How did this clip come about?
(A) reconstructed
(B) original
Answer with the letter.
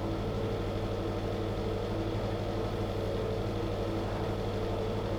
B